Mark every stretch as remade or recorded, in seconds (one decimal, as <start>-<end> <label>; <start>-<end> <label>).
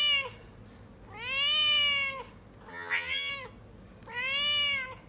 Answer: 0.0-2.7 recorded; 2.7-3.3 remade; 3.3-5.1 recorded